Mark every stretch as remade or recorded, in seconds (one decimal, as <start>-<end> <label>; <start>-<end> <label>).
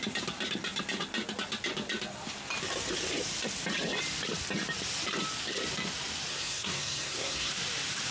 0.0-6.3 recorded; 6.3-7.5 remade; 7.5-8.1 recorded